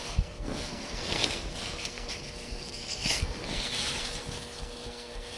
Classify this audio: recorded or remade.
remade